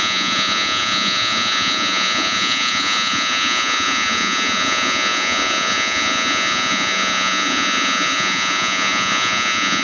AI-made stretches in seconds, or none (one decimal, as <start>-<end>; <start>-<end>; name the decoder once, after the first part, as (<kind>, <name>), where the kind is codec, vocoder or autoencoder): 0.0-9.8 (vocoder, Vocos)